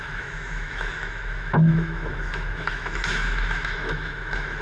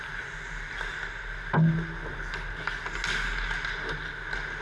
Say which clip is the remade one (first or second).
first